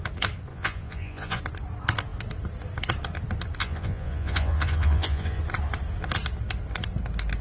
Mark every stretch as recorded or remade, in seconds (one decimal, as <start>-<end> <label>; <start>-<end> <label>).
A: 0.0-0.5 recorded; 0.5-1.4 remade; 1.4-3.6 recorded; 3.6-5.4 remade; 5.4-7.4 recorded